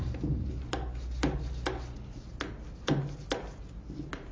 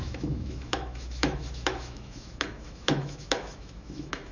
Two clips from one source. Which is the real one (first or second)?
first